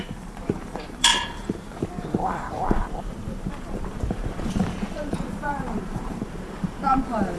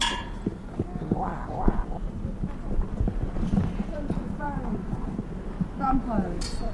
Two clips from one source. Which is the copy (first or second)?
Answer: first